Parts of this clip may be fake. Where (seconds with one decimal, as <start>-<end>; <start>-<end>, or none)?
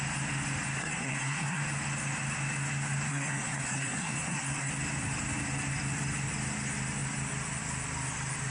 0.8-1.6; 3.1-4.7